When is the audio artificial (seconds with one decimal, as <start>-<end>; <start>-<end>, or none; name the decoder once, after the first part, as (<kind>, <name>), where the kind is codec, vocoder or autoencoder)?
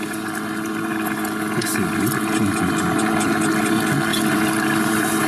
none